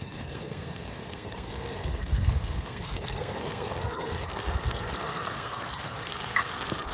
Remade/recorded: remade